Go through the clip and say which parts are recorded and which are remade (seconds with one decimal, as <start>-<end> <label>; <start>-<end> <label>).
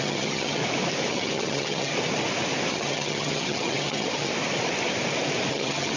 0.0-0.6 remade; 0.6-1.1 recorded; 1.1-1.9 remade; 1.9-2.7 recorded; 2.7-4.3 remade; 4.3-5.5 recorded; 5.5-6.0 remade